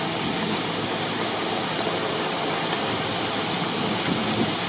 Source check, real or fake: real